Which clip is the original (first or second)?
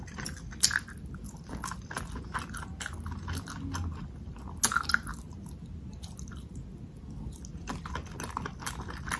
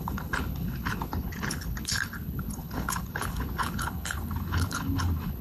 first